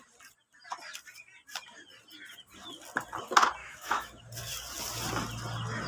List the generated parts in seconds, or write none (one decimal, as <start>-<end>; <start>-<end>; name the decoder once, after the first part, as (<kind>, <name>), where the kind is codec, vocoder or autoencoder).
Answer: 3.6-4.2 (autoencoder, DAC-VAE)